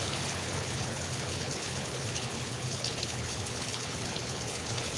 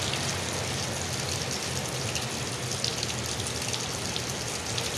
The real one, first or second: second